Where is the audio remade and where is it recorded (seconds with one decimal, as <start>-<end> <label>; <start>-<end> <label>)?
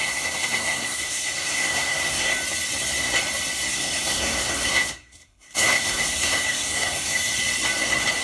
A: 0.0-2.3 remade; 2.3-3.7 recorded; 3.7-7.3 remade; 7.3-8.2 recorded